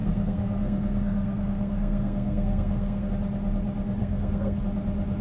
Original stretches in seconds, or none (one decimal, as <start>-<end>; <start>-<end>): 3.1-4.0; 4.6-5.2